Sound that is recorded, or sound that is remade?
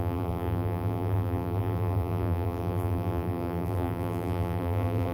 remade